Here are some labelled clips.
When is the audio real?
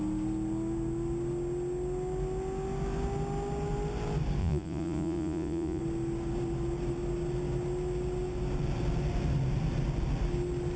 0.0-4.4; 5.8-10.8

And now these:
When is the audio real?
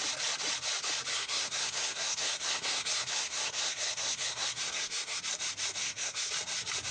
0.0-1.1; 5.2-5.8; 6.3-6.9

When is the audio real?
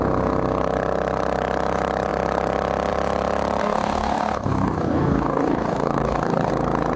0.0-3.6; 6.5-7.0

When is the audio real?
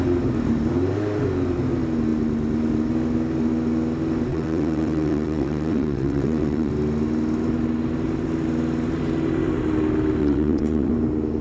0.0-4.3; 6.7-10.2; 10.9-11.4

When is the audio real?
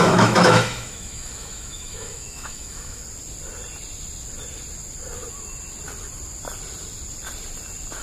3.0-8.0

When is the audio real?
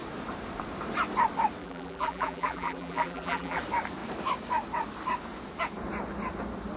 0.0-1.6; 3.6-6.8